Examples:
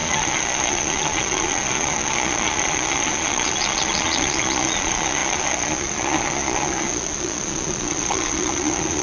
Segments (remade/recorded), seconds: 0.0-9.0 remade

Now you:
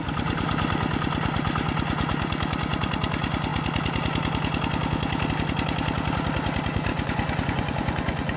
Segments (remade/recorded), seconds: 0.0-6.9 recorded; 6.9-8.4 remade

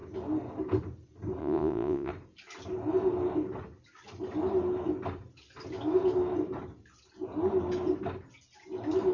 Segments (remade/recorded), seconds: 0.0-1.4 recorded; 1.4-2.1 remade; 2.1-9.1 recorded

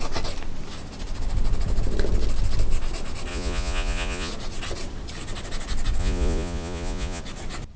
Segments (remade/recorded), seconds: 0.0-3.3 recorded; 3.3-4.3 remade; 4.3-6.0 recorded; 6.0-7.2 remade; 7.2-7.8 recorded